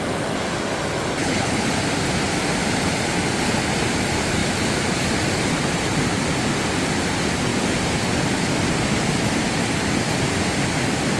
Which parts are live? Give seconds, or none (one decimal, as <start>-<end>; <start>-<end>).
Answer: 0.0-1.2; 1.7-11.2